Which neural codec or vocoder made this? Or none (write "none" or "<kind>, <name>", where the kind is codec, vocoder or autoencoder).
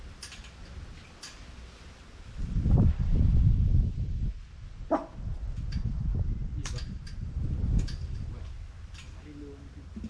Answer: none